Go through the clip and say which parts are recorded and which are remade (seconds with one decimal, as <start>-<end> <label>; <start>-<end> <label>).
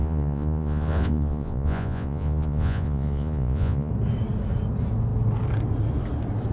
0.0-3.9 remade; 3.9-6.5 recorded